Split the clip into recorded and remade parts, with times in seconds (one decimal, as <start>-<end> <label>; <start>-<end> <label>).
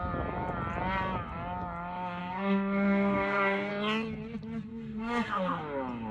0.0-2.2 recorded; 2.2-3.7 remade; 3.7-4.7 recorded; 4.7-5.6 remade; 5.6-6.1 recorded